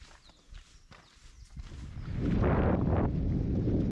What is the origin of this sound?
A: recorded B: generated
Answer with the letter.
A